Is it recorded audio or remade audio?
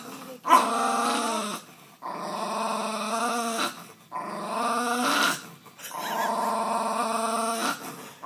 recorded